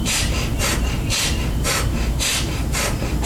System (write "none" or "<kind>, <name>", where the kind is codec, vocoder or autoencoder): vocoder, BigVGAN v2